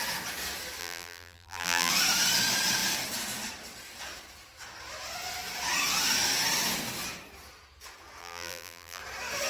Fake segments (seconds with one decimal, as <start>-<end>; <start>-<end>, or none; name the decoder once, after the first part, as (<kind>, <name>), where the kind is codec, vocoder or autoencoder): 0.8-1.9 (vocoder, BigVGAN v2); 8.2-9.0